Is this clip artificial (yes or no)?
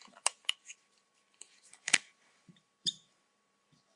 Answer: yes